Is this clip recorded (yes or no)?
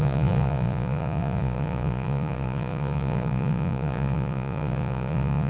no